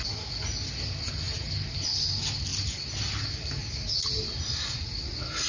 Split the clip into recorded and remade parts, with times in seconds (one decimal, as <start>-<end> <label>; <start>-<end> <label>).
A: 0.0-5.5 recorded